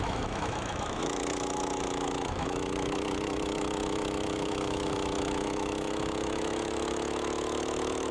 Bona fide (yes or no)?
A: no